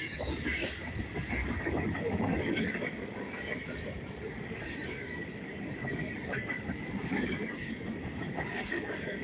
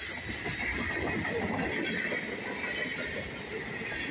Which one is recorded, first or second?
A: second